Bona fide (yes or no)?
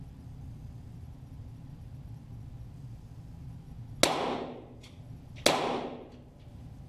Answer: yes